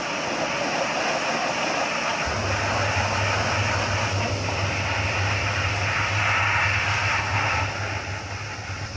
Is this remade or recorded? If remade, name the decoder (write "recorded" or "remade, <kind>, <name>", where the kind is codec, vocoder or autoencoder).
recorded